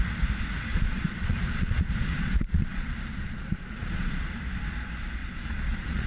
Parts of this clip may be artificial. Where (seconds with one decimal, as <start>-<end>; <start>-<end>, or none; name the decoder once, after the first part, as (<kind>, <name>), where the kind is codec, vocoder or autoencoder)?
0.7-4.4 (vocoder, Vocos); 5.2-6.1